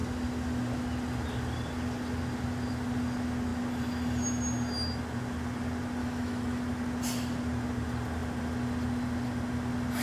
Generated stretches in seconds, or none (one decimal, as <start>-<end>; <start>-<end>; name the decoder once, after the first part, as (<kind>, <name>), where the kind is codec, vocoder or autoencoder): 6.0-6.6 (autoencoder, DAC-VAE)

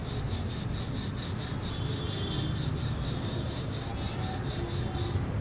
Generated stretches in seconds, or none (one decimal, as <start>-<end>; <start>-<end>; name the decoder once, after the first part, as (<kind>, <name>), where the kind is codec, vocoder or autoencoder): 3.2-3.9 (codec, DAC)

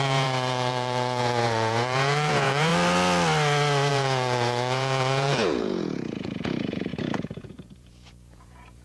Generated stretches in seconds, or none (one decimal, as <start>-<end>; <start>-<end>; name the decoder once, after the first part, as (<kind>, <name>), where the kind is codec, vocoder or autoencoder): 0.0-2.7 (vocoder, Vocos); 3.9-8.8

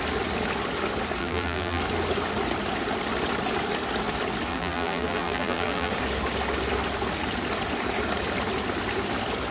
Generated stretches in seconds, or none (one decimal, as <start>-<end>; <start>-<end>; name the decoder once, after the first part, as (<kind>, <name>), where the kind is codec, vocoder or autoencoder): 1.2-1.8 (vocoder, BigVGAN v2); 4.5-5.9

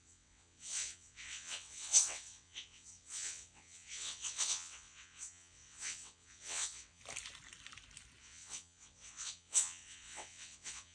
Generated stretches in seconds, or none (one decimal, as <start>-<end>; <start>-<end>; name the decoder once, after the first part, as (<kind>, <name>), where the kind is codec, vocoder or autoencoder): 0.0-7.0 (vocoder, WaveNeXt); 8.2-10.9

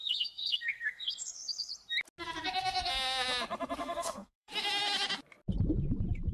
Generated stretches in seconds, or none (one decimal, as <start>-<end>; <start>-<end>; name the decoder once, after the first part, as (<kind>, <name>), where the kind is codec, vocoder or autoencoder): 0.0-1.7 (codec, SNAC); 3.8-4.5

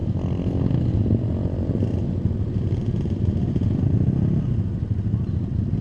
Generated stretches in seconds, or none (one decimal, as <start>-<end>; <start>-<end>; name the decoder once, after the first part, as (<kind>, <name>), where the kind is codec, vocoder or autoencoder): none